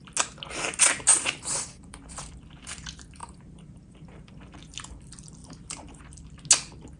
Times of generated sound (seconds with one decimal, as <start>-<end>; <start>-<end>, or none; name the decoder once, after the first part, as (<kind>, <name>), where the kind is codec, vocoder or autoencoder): 1.1-2.3 (vocoder, BigVGAN v2); 3.2-4.3; 5.4-6.0